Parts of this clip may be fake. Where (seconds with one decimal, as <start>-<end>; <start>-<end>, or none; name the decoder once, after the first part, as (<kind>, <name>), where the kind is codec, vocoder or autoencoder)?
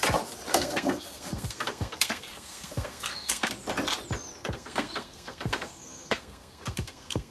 0.5-3.5 (codec, SNAC); 4.4-7.3